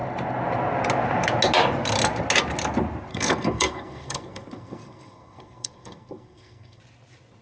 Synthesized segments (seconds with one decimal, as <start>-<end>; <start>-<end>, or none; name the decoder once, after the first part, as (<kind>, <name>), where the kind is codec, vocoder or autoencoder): 3.1-6.8 (codec, SNAC)